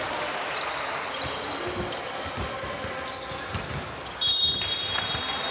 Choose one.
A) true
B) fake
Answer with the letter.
A